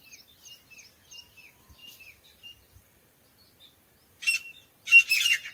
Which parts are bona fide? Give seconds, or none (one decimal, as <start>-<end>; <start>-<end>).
0.0-1.8; 5.1-5.5